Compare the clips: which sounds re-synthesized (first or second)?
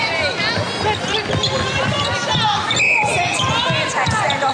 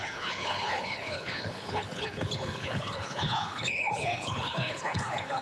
second